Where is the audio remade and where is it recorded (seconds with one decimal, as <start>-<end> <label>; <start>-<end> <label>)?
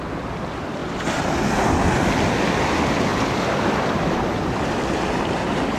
0.0-3.1 recorded; 3.1-4.9 remade; 4.9-5.8 recorded